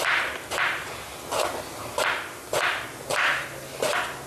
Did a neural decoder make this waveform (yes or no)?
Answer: no